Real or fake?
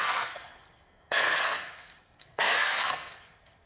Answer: fake